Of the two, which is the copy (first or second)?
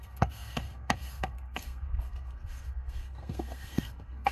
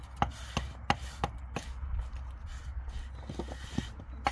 first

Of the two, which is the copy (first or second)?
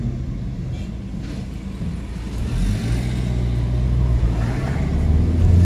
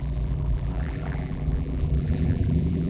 second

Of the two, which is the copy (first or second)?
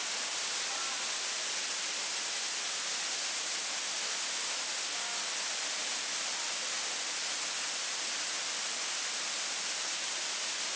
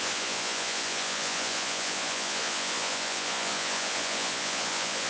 second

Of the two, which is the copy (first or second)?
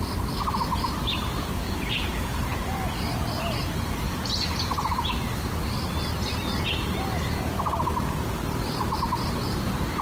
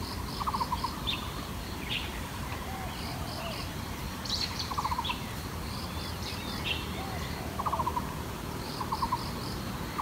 second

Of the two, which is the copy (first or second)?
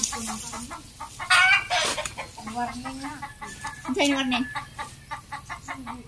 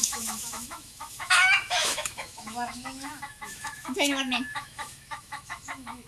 second